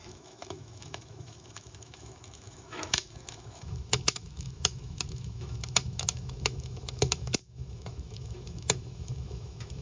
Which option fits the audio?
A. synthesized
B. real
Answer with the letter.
A